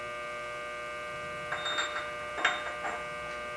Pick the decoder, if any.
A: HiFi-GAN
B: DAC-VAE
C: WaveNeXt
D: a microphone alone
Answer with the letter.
D